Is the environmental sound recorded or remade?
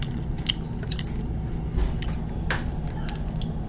recorded